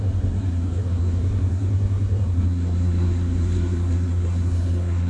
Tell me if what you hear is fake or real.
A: fake